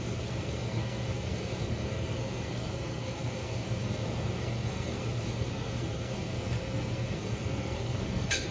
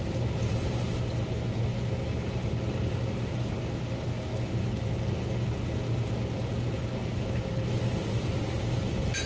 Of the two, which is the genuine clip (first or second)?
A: second